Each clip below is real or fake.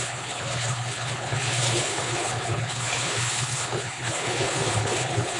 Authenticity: fake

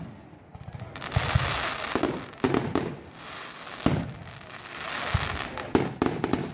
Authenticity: real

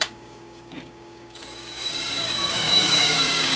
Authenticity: fake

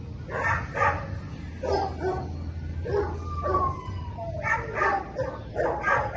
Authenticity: real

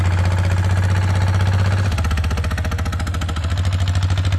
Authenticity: real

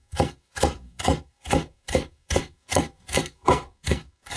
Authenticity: fake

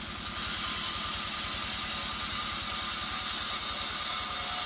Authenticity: real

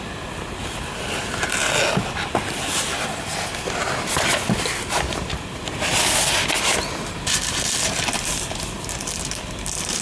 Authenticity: real